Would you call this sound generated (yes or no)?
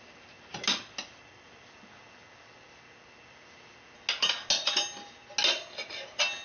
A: no